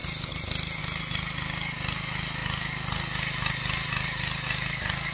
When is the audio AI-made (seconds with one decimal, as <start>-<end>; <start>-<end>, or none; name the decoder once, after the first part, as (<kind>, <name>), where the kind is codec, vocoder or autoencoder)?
none